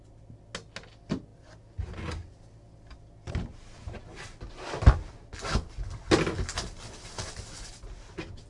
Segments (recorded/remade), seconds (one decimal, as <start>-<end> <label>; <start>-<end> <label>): 0.0-8.5 recorded